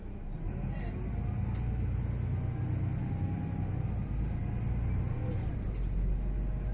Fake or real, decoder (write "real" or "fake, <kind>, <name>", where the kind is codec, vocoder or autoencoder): real